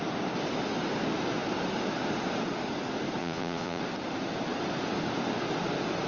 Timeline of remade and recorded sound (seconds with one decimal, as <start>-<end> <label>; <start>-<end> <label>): 0.0-3.2 recorded; 3.2-3.8 remade; 3.8-6.1 recorded